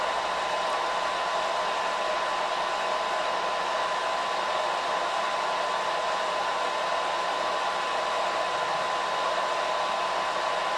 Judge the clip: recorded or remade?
recorded